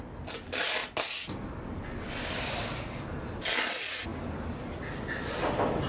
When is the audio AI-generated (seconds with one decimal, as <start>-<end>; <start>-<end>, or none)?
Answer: none